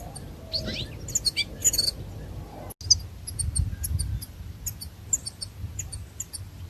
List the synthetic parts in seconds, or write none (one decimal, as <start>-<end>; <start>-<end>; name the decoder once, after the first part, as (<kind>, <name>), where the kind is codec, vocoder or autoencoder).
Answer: none